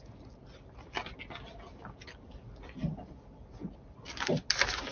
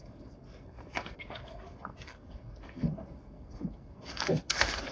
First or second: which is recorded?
first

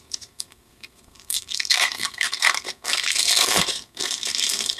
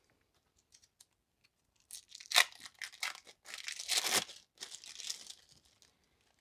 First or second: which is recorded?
second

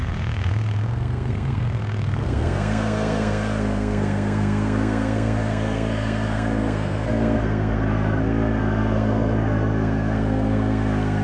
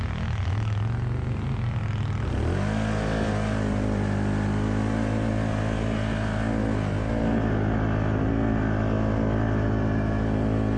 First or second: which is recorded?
second